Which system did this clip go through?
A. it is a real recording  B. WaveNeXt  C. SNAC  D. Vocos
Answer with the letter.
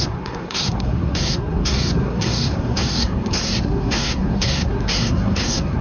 C